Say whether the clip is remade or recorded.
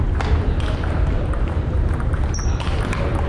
recorded